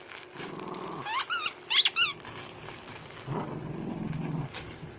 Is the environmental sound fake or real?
real